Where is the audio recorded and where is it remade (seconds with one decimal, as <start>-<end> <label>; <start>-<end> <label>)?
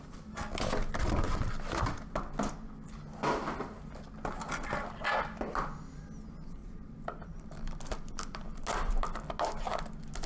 0.0-6.6 recorded; 6.6-7.8 remade; 7.8-10.3 recorded